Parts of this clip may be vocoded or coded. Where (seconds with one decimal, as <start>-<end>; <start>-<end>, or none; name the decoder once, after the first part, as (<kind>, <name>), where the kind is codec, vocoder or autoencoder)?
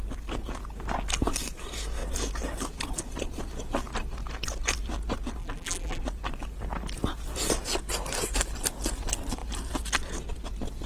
5.4-6.0 (vocoder, BigVGAN v2)